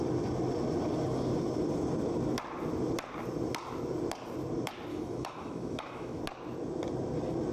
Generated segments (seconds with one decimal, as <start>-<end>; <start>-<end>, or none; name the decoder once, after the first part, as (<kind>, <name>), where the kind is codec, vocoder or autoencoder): 4.9-6.2 (autoencoder, DAC-VAE)